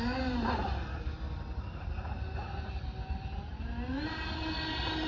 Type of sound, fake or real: real